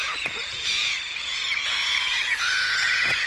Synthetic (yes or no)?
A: yes